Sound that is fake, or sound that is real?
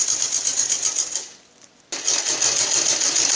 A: real